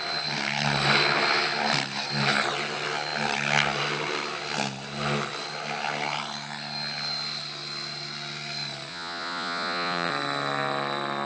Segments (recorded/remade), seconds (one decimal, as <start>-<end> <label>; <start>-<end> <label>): 0.0-8.9 recorded; 8.9-10.1 remade; 10.1-11.3 recorded